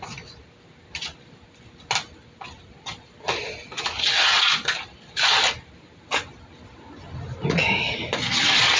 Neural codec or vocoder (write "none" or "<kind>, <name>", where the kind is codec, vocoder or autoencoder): none